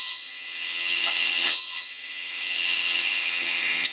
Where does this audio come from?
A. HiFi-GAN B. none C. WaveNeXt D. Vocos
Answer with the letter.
A